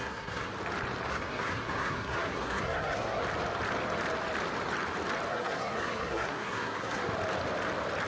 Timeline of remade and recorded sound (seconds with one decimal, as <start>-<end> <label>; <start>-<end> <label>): 0.0-0.5 remade; 0.5-1.1 recorded; 1.1-3.2 remade; 3.2-5.3 recorded; 5.3-7.0 remade; 7.0-8.1 recorded